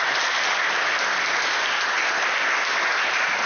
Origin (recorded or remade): recorded